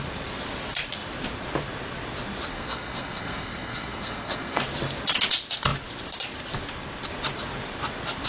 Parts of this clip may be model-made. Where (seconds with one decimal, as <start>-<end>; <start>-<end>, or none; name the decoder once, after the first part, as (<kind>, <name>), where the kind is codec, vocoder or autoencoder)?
2.5-4.6 (codec, SNAC)